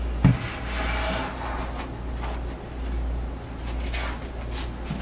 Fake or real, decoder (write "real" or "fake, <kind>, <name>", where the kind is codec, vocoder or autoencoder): real